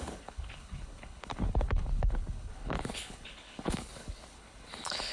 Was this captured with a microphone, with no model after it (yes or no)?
no